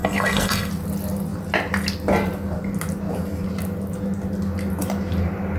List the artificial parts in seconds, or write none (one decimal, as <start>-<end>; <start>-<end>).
0.0-0.7

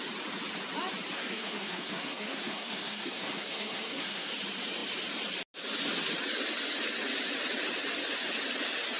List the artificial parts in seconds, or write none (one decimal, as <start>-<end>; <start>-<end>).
1.1-4.3

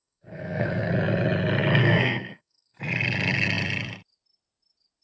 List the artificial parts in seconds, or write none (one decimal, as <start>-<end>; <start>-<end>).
0.0-0.9; 1.8-2.8

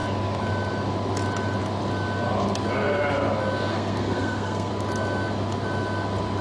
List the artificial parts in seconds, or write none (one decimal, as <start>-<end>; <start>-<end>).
3.7-4.7

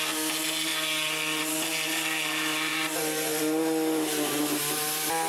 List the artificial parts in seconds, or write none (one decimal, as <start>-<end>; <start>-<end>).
none